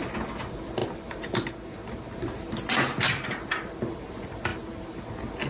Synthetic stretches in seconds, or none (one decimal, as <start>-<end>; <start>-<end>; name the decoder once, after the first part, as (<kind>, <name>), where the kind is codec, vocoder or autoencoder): none